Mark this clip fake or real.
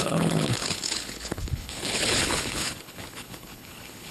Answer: fake